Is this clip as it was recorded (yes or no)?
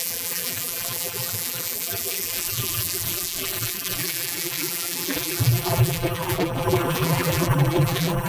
no